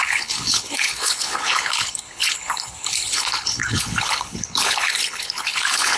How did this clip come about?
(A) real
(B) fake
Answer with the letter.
B